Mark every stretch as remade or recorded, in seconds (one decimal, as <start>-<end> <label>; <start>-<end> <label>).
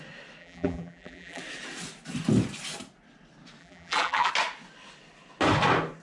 0.0-0.4 recorded; 0.4-1.4 remade; 1.4-3.6 recorded; 3.6-4.3 remade; 4.3-6.0 recorded